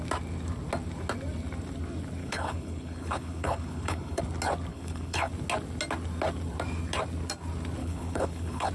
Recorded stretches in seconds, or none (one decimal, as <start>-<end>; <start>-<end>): 0.0-2.2; 4.2-4.7; 5.3-7.8